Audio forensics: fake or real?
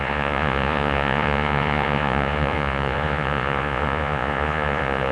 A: fake